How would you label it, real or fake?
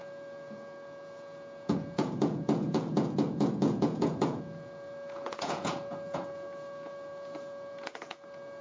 fake